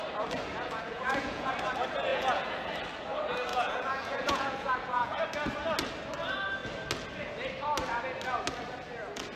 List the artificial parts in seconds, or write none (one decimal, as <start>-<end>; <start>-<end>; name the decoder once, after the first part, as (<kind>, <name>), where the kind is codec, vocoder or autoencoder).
0.5-1.5 (vocoder, Vocos); 2.1-2.7; 3.5-5.2